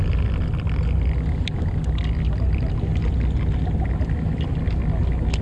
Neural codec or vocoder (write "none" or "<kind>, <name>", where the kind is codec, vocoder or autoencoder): none